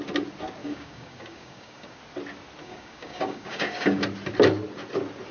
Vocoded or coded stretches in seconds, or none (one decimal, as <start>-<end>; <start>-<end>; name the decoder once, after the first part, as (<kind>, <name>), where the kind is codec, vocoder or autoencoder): 0.6-2.0 (codec, DAC); 2.6-4.0